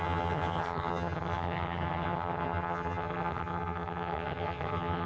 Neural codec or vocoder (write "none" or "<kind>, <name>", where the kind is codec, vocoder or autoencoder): vocoder, HiFi-GAN